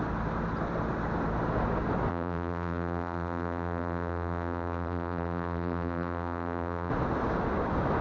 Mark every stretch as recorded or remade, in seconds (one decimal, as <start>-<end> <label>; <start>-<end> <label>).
0.0-2.1 recorded; 2.1-6.9 remade; 6.9-8.0 recorded